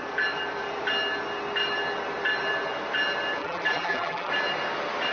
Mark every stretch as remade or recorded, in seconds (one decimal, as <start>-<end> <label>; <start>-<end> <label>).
0.0-3.4 recorded; 3.4-4.3 remade; 4.3-5.1 recorded

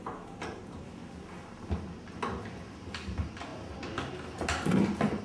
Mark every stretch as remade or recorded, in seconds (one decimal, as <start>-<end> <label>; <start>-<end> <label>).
0.0-1.0 remade; 1.0-2.7 recorded; 2.7-3.5 remade; 3.5-5.2 recorded

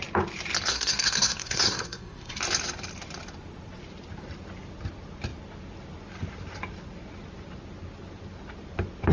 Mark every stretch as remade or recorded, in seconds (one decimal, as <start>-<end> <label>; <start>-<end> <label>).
0.0-0.7 recorded; 0.7-2.4 remade; 2.4-9.1 recorded